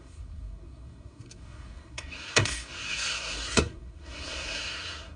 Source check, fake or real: fake